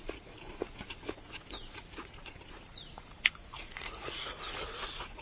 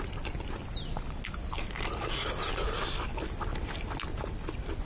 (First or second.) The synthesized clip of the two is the first